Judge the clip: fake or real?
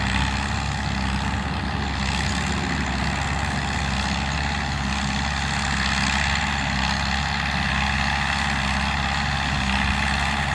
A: real